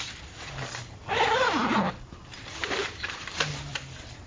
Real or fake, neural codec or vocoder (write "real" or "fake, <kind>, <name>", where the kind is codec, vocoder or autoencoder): real